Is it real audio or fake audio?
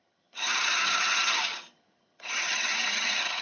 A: fake